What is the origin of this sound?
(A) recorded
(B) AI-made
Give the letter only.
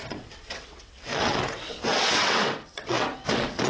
B